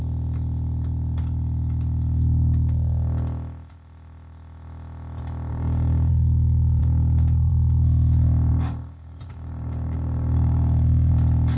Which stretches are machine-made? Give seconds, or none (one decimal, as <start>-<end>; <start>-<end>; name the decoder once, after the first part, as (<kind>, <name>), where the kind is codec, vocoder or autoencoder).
5.5-6.1 (codec, DAC); 6.8-7.5; 8.5-11.1

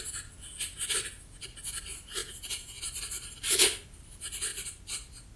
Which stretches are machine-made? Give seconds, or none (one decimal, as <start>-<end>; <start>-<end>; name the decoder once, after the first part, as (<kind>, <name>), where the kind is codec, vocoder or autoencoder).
2.2-2.8 (vocoder, Vocos)

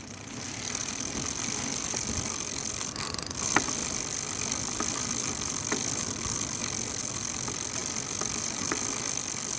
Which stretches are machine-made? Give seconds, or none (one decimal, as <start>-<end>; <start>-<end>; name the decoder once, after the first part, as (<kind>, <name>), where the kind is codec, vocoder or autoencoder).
none

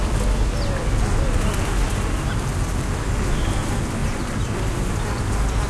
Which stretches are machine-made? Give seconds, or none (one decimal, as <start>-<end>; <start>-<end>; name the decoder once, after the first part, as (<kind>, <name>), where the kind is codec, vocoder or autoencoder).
4.0-5.7 (vocoder, BigVGAN v2)